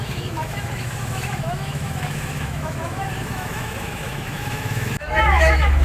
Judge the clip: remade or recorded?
remade